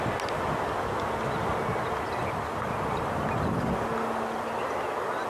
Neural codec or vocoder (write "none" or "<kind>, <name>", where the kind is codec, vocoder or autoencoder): none